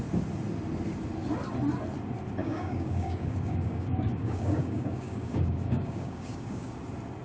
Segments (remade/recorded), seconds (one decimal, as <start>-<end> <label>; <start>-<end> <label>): 0.0-2.4 recorded; 2.4-6.7 remade; 6.7-7.2 recorded